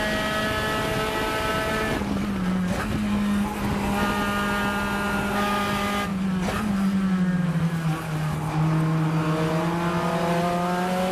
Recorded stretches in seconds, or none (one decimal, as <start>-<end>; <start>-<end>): 0.0-11.1